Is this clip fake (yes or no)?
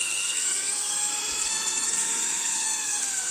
yes